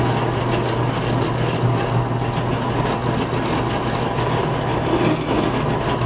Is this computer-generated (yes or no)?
no